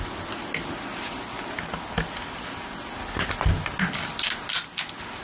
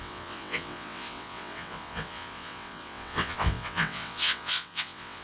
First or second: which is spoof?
second